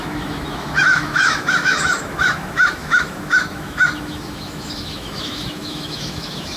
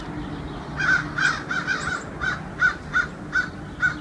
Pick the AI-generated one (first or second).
first